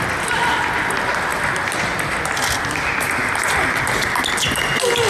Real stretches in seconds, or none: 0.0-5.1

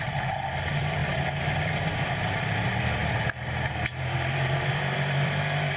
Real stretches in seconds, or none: 3.0-3.9

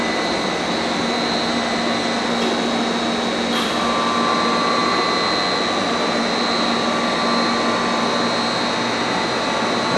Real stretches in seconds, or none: 0.0-10.0

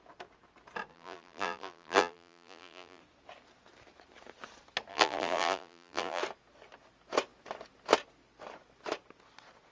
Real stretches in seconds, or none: 0.0-0.9; 3.0-4.9; 6.2-9.7

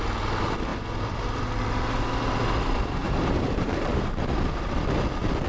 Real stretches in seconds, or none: 0.0-3.0; 4.9-5.5

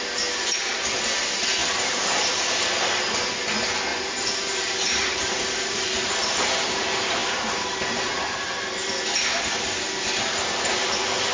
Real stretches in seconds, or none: 0.0-1.6; 2.2-3.9; 6.1-7.2; 8.9-11.3